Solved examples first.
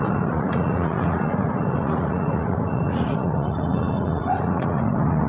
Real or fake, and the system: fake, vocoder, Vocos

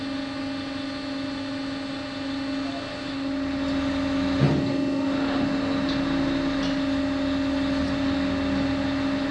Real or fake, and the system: real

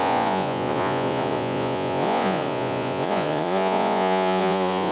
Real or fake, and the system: fake, vocoder, Vocos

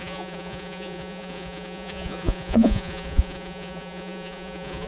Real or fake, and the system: fake, vocoder, Vocos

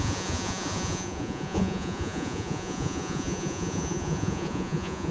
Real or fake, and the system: fake, vocoder, Vocos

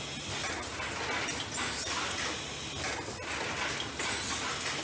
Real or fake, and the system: real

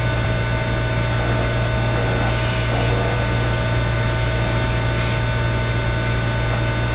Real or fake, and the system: real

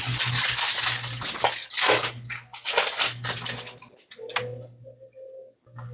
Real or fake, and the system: real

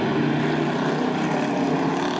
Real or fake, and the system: real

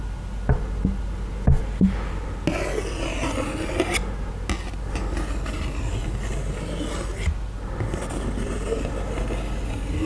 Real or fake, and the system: real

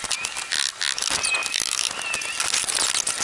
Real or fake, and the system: real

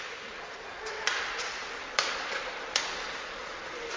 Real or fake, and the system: fake, vocoder, Vocos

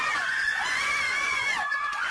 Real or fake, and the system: fake, vocoder, Vocos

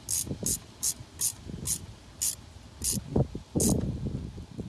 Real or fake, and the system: real